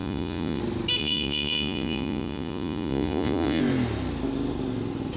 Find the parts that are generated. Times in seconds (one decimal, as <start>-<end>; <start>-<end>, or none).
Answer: 0.0-0.6; 1.0-3.6